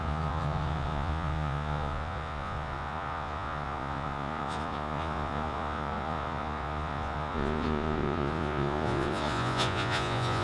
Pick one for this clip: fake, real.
fake